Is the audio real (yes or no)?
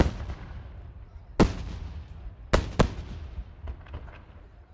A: yes